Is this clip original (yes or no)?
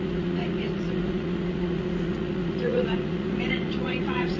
no